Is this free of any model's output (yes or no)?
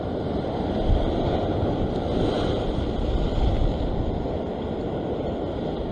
yes